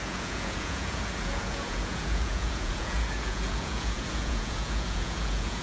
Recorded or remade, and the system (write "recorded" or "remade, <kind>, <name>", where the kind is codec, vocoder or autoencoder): remade, vocoder, Vocos